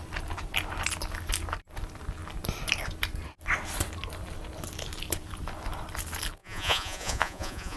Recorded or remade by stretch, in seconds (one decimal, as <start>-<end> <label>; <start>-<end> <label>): 0.0-6.4 recorded; 6.4-7.8 remade